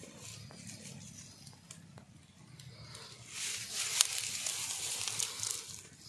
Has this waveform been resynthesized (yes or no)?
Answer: no